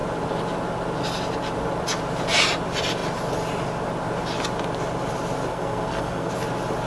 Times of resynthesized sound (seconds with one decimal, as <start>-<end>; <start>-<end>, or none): 5.5-6.3